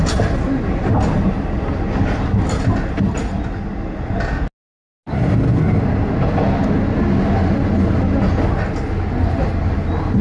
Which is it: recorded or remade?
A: recorded